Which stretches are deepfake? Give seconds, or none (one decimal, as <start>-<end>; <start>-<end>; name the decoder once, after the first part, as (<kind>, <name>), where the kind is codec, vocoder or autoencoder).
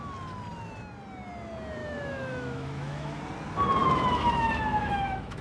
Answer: 1.8-3.2 (autoencoder, DAC-VAE); 3.8-5.4